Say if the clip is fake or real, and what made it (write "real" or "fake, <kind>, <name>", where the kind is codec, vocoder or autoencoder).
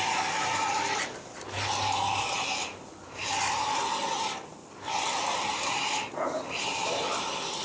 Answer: real